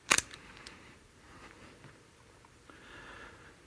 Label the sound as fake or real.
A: fake